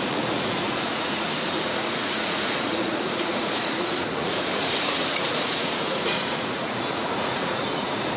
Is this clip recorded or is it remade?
remade